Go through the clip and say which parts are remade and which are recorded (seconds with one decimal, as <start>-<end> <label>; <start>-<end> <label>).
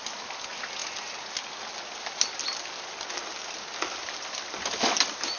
0.0-5.4 recorded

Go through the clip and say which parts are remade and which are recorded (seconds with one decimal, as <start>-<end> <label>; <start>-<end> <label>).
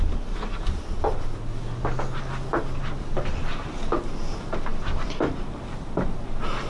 0.0-6.7 recorded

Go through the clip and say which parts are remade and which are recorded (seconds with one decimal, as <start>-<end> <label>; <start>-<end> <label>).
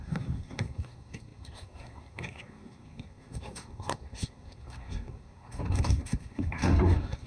0.0-7.3 remade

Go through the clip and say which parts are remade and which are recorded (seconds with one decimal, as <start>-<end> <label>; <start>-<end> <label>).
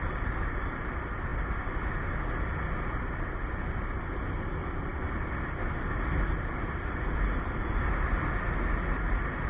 0.0-9.5 recorded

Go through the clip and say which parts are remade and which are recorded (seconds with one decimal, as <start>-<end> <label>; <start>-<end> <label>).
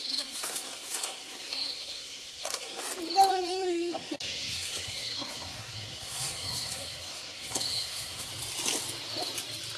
0.0-2.8 remade; 2.8-3.3 recorded; 3.3-8.3 remade; 8.3-9.8 recorded